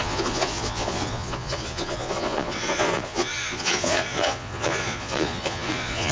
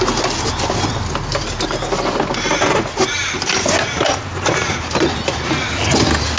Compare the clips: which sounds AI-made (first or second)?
first